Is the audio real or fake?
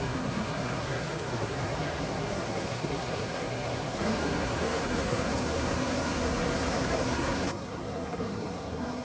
fake